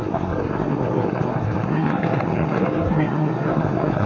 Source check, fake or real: fake